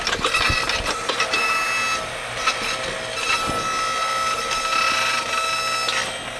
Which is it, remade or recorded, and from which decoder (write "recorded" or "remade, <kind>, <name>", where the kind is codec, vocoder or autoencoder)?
recorded